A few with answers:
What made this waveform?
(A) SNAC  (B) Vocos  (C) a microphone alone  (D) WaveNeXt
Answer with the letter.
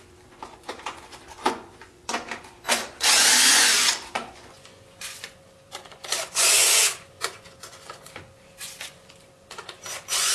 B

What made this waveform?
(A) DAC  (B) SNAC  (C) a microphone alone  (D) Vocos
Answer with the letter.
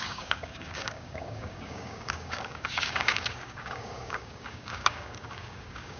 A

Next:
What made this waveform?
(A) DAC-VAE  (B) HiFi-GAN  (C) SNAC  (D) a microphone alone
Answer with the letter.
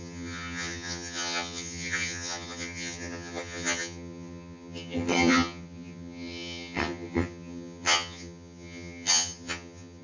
B